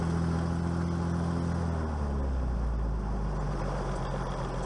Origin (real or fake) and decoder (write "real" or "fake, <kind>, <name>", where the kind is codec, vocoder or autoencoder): real